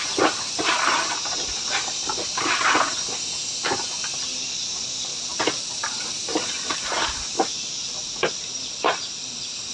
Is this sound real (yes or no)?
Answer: yes